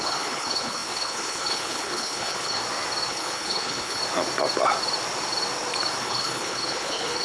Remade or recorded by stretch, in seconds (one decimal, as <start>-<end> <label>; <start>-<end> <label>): 0.0-2.6 remade; 2.6-3.1 recorded; 3.1-4.0 remade; 4.0-6.0 recorded; 6.0-7.2 remade